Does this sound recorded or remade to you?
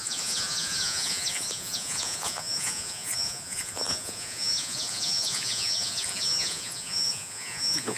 remade